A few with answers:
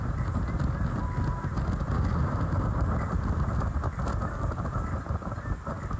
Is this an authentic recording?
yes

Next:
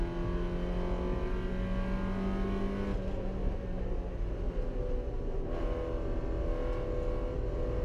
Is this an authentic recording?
yes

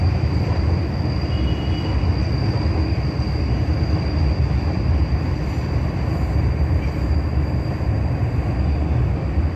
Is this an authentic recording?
yes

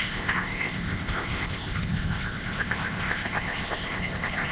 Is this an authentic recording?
no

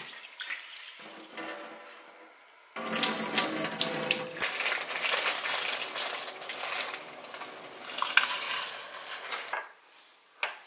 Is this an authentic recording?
yes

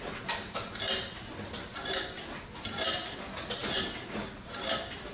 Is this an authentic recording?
yes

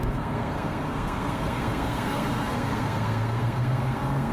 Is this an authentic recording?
no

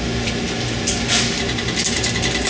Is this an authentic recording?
yes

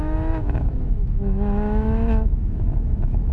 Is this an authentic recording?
no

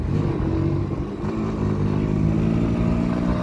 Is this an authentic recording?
yes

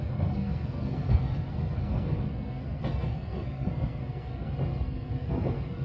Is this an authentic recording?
no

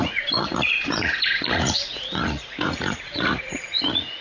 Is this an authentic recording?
no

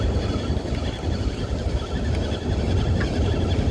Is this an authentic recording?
yes